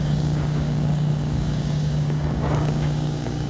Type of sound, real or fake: fake